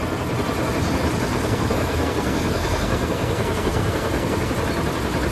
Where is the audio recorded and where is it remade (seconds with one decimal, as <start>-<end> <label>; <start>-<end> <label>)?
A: 0.0-1.3 recorded; 1.3-4.5 remade; 4.5-5.3 recorded